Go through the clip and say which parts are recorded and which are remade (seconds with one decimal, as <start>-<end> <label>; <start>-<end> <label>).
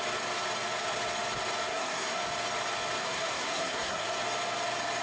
0.0-1.7 recorded; 1.7-2.2 remade; 2.2-3.0 recorded; 3.0-4.1 remade; 4.1-5.0 recorded